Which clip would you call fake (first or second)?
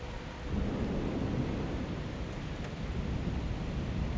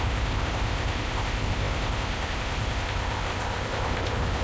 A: second